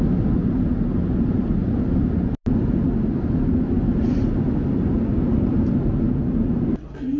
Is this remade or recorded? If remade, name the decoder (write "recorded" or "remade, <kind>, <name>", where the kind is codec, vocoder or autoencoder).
recorded